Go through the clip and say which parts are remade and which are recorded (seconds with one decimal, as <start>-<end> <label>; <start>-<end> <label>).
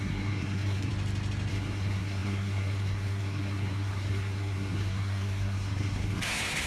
0.0-0.9 remade; 0.9-1.5 recorded; 1.5-6.7 remade